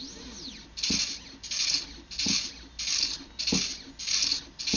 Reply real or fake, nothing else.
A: real